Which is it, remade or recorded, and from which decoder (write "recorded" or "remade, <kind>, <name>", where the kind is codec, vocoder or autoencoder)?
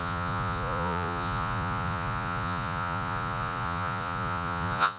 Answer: remade, vocoder, Vocos